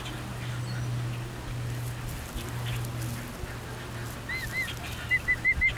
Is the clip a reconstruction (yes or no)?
no